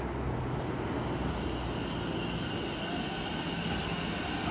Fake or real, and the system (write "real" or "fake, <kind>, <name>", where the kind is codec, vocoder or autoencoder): real